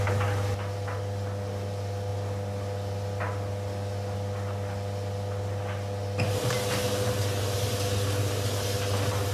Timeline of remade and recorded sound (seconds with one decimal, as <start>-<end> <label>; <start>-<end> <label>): 0.0-9.3 recorded